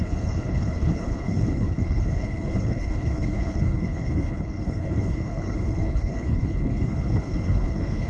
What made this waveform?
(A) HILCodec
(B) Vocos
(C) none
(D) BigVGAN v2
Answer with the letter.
A